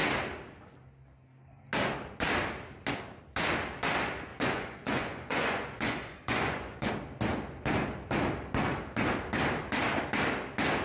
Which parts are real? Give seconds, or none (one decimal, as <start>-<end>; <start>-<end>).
0.0-4.3; 6.9-10.8